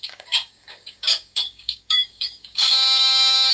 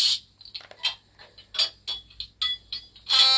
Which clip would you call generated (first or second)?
first